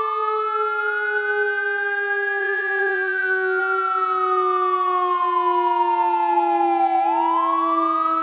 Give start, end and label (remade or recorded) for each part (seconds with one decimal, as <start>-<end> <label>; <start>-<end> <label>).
0.0-2.4 recorded; 2.4-3.6 remade; 3.6-8.2 recorded